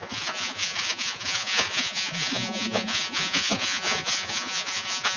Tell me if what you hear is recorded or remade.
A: remade